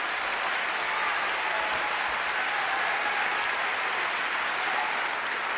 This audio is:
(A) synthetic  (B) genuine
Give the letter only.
B